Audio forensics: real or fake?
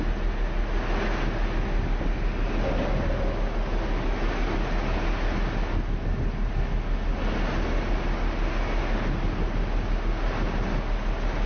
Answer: real